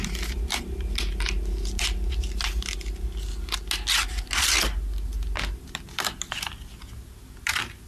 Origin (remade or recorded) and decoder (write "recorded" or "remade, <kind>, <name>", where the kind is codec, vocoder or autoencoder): recorded